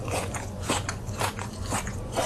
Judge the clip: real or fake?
fake